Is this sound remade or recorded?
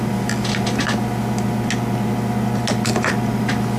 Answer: recorded